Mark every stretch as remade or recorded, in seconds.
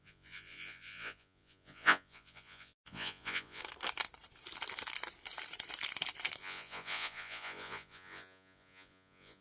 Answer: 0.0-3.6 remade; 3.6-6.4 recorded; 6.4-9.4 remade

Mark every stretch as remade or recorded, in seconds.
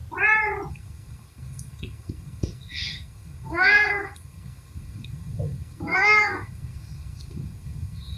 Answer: 0.0-0.7 recorded; 0.7-8.2 remade